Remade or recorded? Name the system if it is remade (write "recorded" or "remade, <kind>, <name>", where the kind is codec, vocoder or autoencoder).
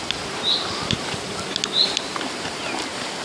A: recorded